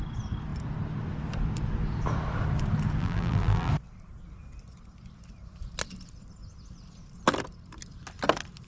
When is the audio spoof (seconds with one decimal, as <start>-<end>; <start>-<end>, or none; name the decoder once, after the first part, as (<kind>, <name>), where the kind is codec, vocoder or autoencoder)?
3.0-3.7 (vocoder, BigVGAN v2)